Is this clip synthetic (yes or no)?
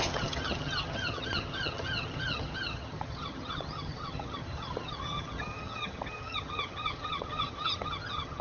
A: yes